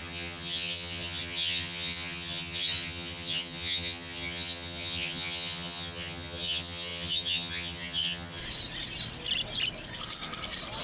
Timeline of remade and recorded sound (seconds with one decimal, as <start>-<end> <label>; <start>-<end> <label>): 0.0-8.4 remade; 8.4-10.8 recorded